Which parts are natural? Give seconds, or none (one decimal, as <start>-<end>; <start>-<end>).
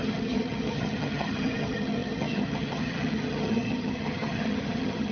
none